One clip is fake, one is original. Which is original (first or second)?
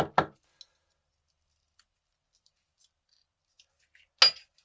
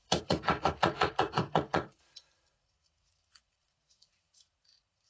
first